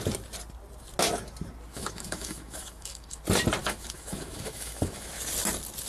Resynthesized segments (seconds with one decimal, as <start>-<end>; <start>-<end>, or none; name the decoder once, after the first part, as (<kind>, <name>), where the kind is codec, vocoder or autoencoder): 1.7-3.2 (autoencoder, DAC-VAE); 3.6-5.1